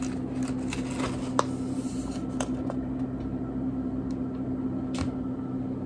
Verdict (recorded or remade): recorded